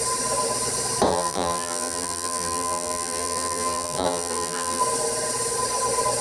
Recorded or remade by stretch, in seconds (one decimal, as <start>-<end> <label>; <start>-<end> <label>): 0.0-1.1 recorded; 1.1-4.8 remade; 4.8-6.2 recorded